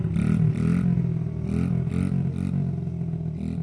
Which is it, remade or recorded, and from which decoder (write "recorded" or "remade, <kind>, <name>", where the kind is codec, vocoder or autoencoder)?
recorded